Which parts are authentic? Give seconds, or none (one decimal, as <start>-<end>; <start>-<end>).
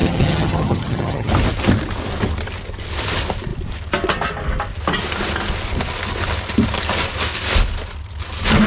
1.3-8.7